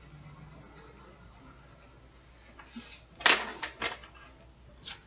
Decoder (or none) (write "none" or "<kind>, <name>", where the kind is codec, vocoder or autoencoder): none